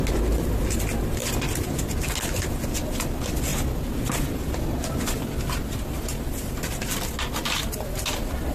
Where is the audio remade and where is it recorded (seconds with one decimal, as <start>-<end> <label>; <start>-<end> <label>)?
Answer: 0.0-3.5 recorded; 3.5-7.0 remade; 7.0-8.5 recorded